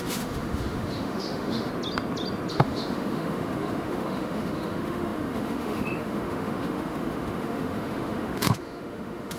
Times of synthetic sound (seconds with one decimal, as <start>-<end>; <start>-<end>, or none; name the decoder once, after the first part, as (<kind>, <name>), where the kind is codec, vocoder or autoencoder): 0.0-1.7 (autoencoder, DAC-VAE); 2.5-9.4

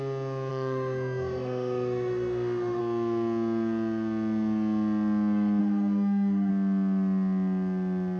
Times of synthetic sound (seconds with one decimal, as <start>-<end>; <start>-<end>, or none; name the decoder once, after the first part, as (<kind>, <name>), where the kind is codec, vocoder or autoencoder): 0.5-2.8 (autoencoder, DAC-VAE); 5.6-6.5